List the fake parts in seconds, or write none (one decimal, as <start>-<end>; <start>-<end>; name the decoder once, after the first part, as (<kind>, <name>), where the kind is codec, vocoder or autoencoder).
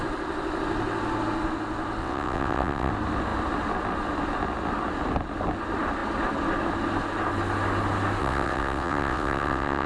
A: 2.0-2.9 (vocoder, WaveNeXt); 8.2-9.9